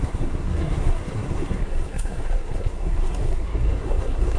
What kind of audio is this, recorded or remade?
remade